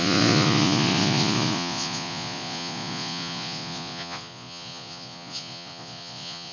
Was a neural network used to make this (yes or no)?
yes